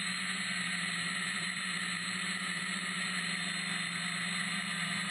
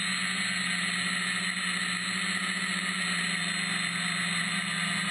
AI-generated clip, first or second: first